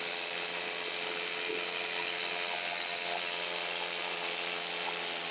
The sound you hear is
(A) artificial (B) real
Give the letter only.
B